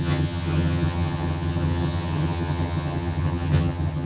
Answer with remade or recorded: remade